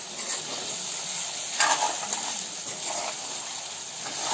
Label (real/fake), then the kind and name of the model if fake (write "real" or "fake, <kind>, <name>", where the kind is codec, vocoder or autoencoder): real